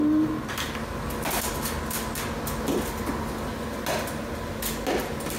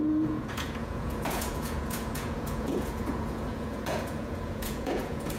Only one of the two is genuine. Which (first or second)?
first